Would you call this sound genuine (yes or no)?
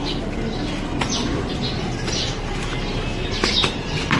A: yes